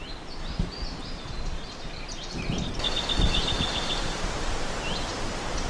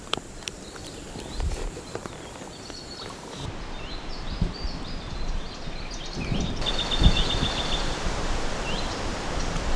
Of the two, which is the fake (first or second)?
second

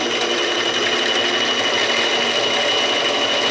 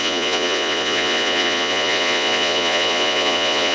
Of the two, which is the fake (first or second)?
second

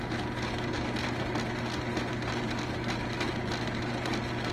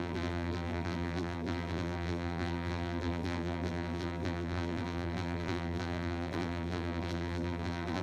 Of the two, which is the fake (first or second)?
second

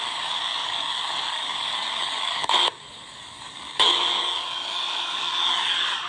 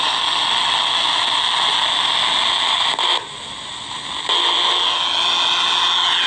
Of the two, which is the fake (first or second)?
first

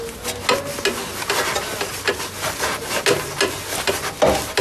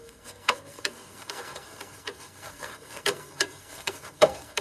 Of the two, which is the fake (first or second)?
second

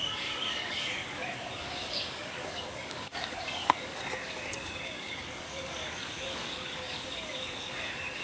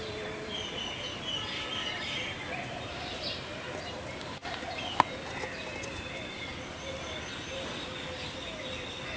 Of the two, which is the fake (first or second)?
first